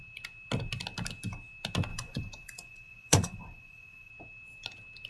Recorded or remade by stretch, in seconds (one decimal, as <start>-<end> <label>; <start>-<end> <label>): 0.0-1.9 recorded; 1.9-4.1 remade; 4.1-5.1 recorded